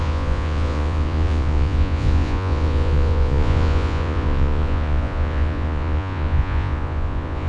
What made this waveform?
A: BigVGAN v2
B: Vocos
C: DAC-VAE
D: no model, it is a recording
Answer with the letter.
B